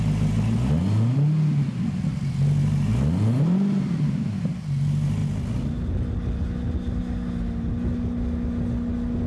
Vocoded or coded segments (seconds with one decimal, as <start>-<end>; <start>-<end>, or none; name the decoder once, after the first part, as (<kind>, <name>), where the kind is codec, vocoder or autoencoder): none